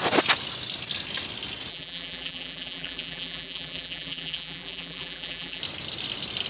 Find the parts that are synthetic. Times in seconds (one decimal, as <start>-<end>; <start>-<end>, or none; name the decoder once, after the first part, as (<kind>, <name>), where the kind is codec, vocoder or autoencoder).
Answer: 1.7-5.6 (vocoder, BigVGAN v2)